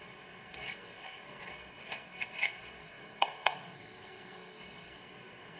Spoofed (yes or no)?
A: yes